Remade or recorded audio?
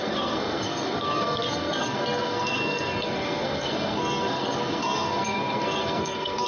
remade